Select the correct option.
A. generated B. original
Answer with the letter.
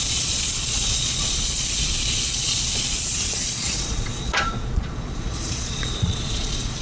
A